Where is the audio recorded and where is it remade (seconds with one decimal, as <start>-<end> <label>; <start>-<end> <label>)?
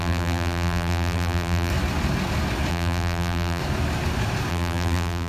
0.0-1.7 remade; 1.7-2.7 recorded; 2.7-3.6 remade; 3.6-4.5 recorded; 4.5-5.3 remade